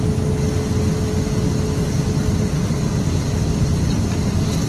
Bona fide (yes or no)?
yes